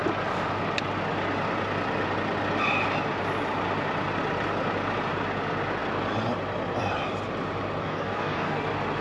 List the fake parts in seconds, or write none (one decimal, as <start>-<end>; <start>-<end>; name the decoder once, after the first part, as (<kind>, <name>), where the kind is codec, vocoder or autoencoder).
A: 7.8-8.6 (codec, DAC)